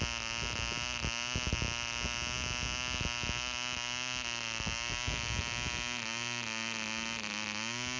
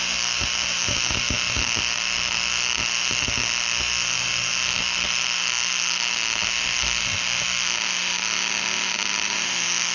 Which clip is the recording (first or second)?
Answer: first